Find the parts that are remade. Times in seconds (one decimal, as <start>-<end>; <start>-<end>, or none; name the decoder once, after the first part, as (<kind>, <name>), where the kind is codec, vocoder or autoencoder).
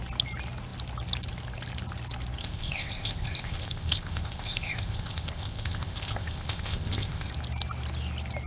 2.4-7.3 (codec, ZipCodec)